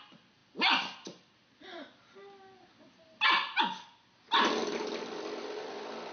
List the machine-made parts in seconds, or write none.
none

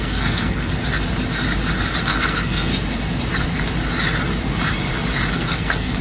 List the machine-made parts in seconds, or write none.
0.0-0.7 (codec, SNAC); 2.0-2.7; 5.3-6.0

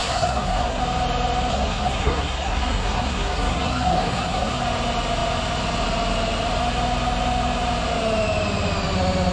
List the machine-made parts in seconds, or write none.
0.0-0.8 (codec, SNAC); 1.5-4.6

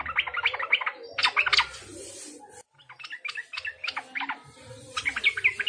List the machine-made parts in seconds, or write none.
none

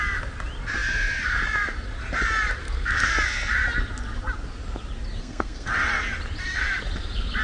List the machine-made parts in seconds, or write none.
2.6-3.1 (codec, SNAC); 5.2-5.7